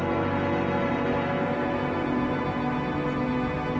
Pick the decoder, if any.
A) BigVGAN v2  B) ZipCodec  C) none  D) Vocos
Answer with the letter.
A